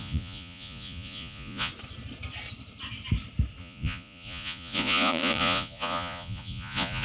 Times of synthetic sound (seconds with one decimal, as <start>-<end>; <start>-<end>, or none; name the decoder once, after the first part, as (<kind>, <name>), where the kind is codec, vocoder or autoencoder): 0.0-1.7 (vocoder, Vocos); 3.6-7.0